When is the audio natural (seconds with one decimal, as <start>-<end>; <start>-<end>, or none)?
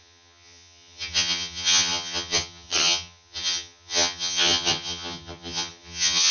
none